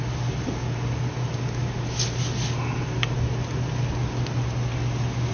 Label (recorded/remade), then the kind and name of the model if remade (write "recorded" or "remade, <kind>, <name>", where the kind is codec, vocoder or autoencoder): recorded